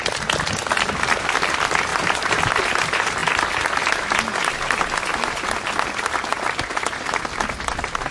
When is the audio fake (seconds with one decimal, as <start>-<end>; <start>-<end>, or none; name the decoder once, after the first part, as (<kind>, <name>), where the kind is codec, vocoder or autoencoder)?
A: none